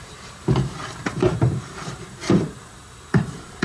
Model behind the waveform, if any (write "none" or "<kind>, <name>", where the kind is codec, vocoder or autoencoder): vocoder, BigVGAN v2